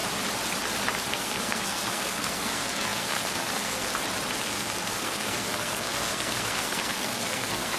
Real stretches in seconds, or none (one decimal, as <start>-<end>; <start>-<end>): 0.0-1.1; 3.9-4.4